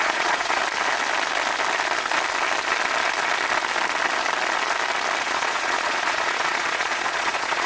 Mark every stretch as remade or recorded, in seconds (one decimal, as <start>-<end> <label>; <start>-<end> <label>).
0.0-0.6 remade; 0.6-5.2 recorded; 5.2-7.7 remade